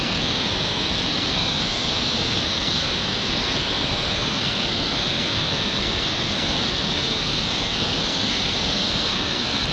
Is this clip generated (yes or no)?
yes